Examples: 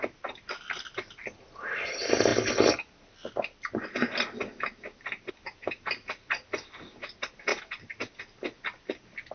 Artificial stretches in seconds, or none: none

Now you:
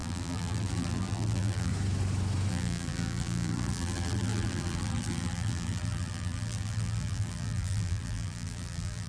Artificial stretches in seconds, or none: 0.0-1.7; 2.5-9.1

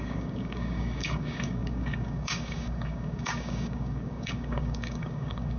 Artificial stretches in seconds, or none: 0.0-5.6